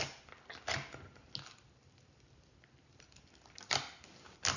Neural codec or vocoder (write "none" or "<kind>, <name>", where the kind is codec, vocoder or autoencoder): none